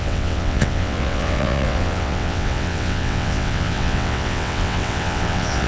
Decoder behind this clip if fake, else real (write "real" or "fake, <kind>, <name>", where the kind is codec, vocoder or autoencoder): fake, vocoder, WaveNeXt